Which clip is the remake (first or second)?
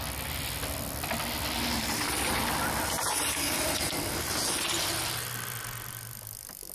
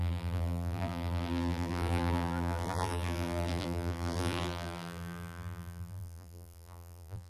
second